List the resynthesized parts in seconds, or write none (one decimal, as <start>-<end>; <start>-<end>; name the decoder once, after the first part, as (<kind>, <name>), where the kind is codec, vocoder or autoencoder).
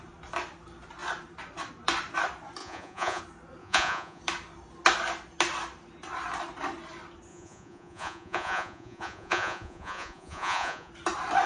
2.6-3.2 (vocoder, Vocos); 3.6-4.2; 7.3-10.9